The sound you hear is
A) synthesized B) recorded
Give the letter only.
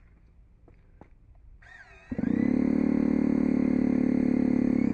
B